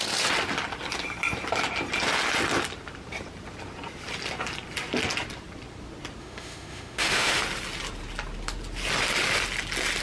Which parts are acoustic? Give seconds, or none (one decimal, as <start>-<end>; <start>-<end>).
0.0-6.2; 7.4-10.0